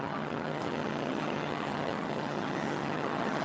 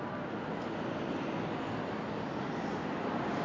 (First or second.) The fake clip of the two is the first